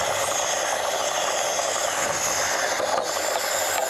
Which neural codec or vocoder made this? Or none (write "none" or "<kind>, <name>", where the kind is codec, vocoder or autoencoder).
none